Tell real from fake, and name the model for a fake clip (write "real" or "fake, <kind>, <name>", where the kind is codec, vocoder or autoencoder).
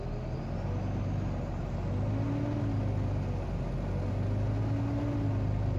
real